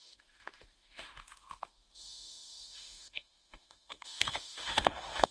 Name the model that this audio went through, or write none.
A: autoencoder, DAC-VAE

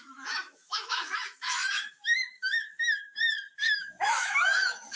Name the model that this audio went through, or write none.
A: autoencoder, DAC-VAE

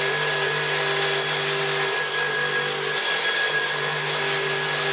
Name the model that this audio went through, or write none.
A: none